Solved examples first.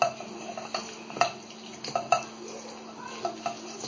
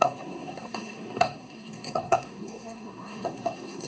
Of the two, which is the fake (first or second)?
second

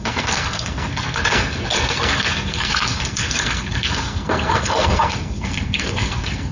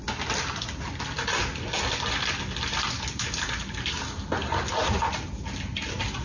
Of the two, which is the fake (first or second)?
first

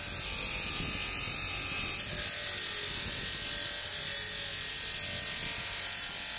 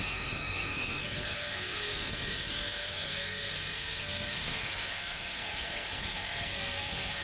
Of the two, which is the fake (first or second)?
second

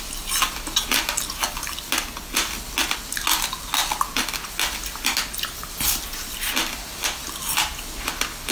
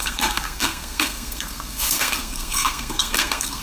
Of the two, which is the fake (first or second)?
second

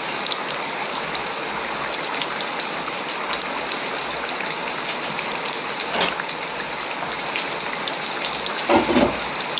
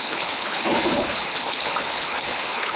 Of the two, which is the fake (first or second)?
second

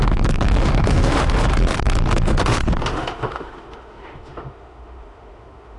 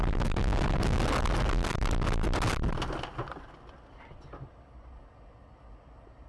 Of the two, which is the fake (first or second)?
first